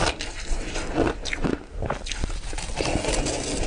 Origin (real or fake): real